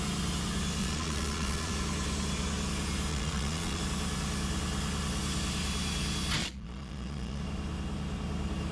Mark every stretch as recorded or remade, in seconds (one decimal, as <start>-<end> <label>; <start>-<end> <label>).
0.0-0.8 recorded; 0.8-1.7 remade; 1.7-3.1 recorded; 3.1-3.8 remade; 3.8-6.4 recorded; 6.4-7.4 remade; 7.4-8.7 recorded